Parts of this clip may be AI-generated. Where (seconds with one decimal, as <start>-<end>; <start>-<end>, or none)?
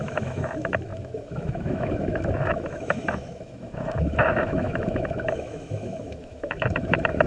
0.0-7.3